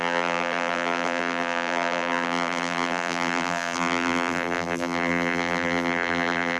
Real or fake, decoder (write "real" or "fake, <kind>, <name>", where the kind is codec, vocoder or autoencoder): fake, vocoder, BigVGAN v2